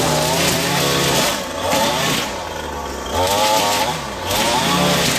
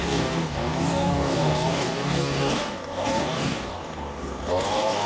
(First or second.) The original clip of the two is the first